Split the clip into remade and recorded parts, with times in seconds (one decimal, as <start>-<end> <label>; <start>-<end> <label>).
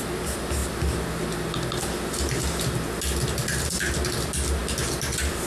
0.0-5.5 recorded